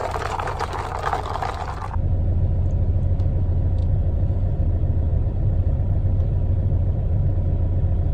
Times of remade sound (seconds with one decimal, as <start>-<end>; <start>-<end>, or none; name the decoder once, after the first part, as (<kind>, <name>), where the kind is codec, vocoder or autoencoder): 3.8-7.3 (vocoder, BigVGAN v2)